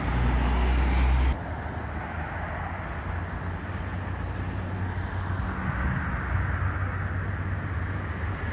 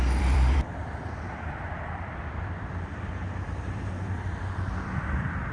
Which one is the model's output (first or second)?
second